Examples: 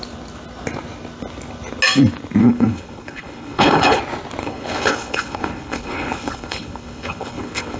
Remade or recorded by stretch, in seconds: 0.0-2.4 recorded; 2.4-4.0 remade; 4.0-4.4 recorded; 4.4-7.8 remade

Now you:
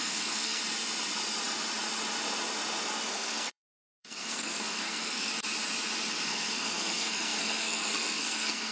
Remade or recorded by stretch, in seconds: 0.0-0.6 remade; 0.6-3.1 recorded; 3.1-5.3 remade; 5.3-6.2 recorded; 6.2-8.7 remade

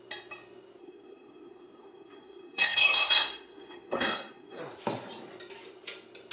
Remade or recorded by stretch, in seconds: 0.0-0.8 recorded; 0.8-4.6 remade; 4.6-6.3 recorded

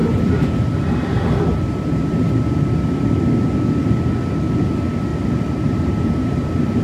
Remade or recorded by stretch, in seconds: 0.0-5.1 recorded; 5.1-6.8 remade

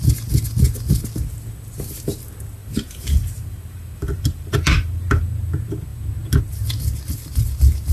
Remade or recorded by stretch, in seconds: 0.0-2.6 recorded; 2.6-5.2 remade; 5.2-7.9 recorded